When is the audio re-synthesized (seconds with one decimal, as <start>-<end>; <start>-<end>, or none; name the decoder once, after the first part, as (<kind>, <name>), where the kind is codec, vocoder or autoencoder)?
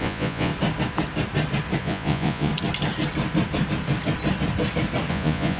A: 0.0-0.5 (vocoder, Vocos); 1.8-2.5; 5.1-5.6